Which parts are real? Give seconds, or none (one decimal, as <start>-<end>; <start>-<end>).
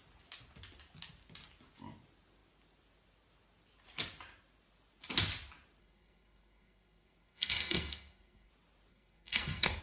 0.0-5.8; 8.5-8.9